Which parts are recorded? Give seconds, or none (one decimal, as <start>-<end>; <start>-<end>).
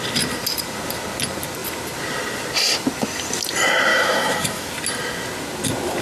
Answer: 0.0-3.9; 4.7-6.0